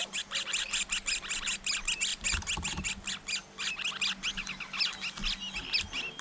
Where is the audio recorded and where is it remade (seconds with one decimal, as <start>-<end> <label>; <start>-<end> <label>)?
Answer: 0.0-6.2 recorded